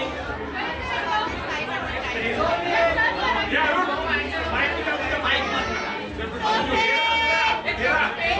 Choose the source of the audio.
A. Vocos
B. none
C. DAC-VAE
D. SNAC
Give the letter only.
B